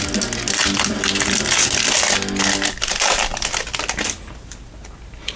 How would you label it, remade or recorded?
recorded